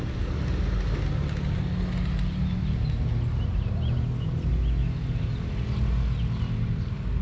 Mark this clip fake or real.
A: real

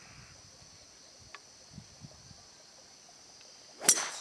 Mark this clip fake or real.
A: real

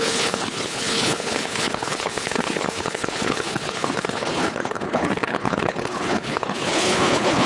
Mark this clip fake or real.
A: fake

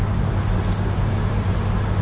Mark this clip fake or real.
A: real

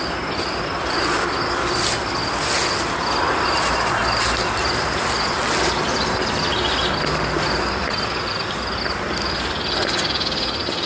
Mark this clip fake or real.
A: real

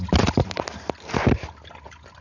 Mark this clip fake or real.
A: real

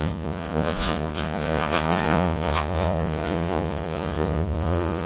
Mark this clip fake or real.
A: fake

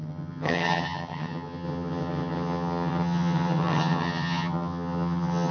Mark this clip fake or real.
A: fake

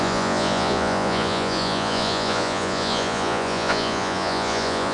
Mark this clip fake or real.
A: fake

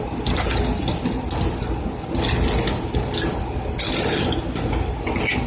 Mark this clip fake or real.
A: real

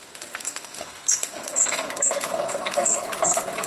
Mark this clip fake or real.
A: fake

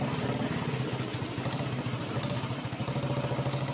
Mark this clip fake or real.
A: real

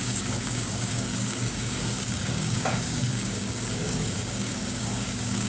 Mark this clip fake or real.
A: fake